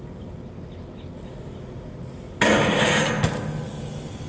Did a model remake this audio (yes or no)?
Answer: no